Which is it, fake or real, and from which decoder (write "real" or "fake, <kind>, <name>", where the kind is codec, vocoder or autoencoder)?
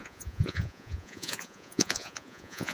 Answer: fake, vocoder, Vocos